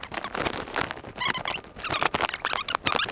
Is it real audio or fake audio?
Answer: real